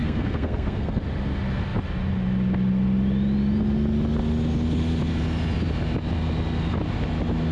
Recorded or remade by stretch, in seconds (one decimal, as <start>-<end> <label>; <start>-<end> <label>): 0.0-1.0 remade; 1.0-7.5 recorded